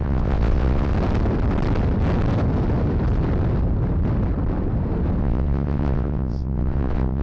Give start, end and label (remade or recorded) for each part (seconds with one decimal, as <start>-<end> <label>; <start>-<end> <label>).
0.0-0.9 remade; 0.9-5.2 recorded; 5.2-7.2 remade